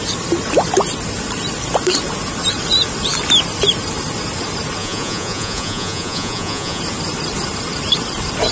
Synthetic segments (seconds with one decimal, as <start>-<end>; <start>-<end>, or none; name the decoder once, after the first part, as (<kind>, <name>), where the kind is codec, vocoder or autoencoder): 4.8-6.8 (vocoder, Vocos)